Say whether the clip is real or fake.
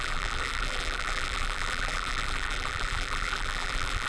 fake